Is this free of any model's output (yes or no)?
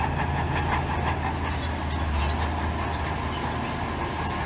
yes